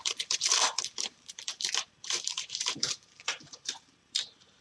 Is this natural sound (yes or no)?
no